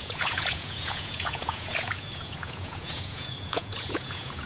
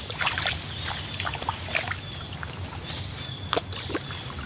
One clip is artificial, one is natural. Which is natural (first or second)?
second